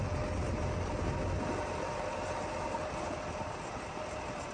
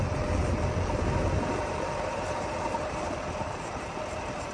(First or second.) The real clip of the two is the first